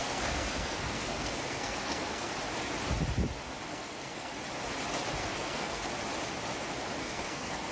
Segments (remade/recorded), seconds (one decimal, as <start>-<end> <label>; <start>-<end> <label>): 0.0-2.3 remade; 2.3-3.7 recorded; 3.7-4.3 remade; 4.3-5.2 recorded; 5.2-5.9 remade; 5.9-7.0 recorded; 7.0-7.7 remade

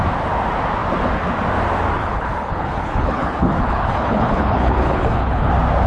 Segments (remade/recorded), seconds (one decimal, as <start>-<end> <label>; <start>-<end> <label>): 0.0-2.0 recorded; 2.0-5.5 remade; 5.5-5.9 recorded